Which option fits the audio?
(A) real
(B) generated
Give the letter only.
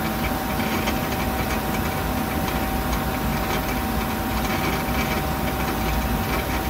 A